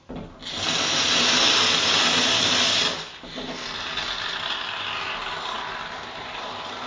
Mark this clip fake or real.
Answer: real